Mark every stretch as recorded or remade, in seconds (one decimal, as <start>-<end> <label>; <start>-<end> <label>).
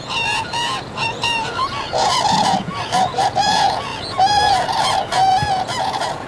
0.0-6.3 remade